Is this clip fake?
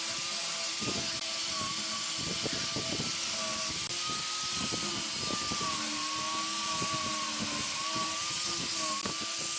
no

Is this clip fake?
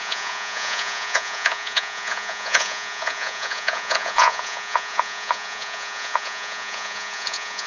yes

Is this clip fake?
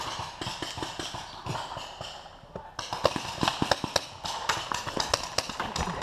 no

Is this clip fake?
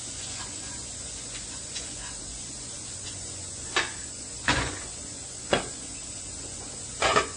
yes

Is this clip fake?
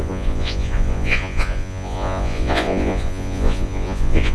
yes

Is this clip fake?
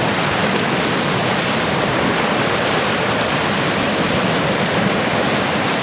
no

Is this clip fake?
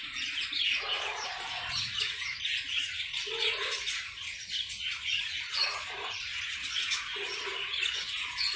yes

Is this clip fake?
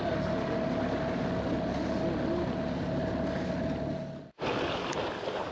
no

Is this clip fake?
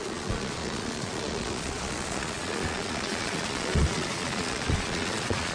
yes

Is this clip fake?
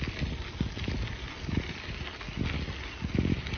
no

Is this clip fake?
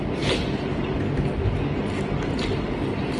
no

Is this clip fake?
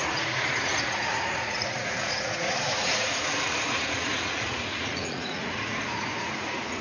yes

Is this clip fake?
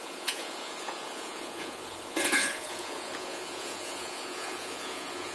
yes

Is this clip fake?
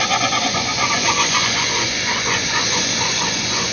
yes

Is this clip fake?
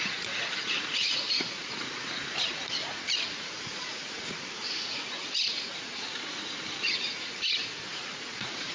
yes